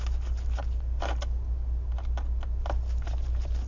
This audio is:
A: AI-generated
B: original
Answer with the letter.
B